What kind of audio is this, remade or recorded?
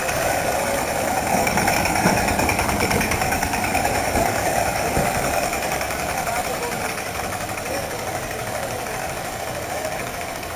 remade